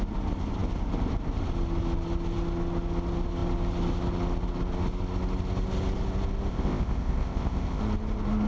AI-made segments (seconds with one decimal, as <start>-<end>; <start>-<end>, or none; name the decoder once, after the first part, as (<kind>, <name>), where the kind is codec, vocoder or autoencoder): 6.5-7.8 (codec, ZipCodec)